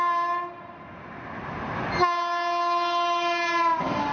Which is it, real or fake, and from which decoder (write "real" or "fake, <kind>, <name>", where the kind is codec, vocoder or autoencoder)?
real